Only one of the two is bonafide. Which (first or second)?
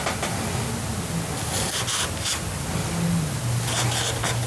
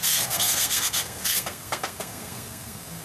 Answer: first